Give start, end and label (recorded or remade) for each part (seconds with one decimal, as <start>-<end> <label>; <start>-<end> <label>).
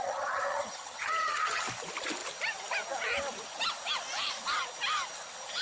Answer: 0.0-1.6 remade; 1.6-5.6 recorded